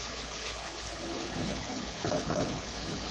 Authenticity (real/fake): fake